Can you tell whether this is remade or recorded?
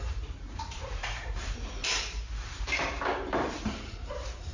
remade